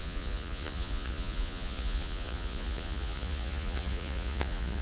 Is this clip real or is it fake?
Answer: fake